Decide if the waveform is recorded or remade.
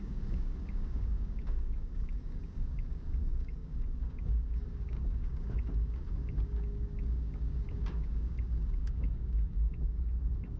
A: remade